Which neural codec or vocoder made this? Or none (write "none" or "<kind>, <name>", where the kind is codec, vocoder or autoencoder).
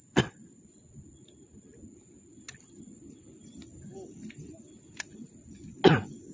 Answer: none